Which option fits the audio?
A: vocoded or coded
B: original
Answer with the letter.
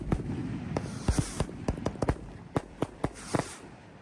B